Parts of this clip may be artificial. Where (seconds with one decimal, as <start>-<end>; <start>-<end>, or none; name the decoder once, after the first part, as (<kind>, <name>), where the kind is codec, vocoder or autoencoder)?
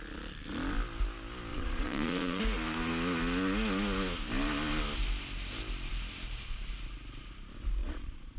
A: 1.5-2.4 (vocoder, Vocos); 7.8-8.4